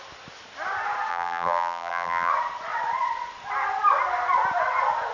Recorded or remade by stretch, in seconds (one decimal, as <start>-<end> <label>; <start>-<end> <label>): 0.0-1.1 recorded; 1.1-2.3 remade; 2.3-5.1 recorded